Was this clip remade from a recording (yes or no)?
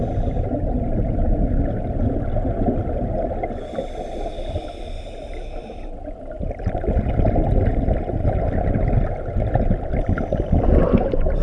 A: no